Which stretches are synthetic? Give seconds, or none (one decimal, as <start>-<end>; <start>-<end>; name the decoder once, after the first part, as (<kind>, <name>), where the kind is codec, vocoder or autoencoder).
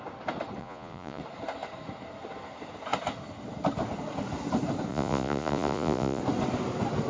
0.6-1.2 (vocoder, Vocos); 4.9-6.2